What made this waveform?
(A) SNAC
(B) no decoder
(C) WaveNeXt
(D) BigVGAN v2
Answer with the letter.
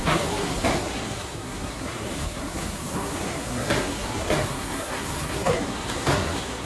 A